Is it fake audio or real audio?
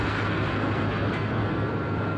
fake